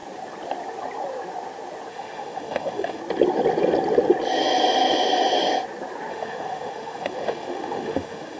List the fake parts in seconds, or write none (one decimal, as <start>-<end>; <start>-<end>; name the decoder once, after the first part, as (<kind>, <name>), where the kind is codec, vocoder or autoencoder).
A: 1.9-3.0 (autoencoder, DAC-VAE); 6.1-8.4